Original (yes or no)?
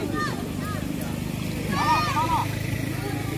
yes